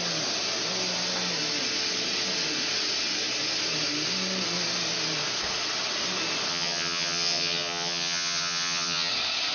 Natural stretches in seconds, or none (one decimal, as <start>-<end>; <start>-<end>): 0.0-6.5; 9.1-9.5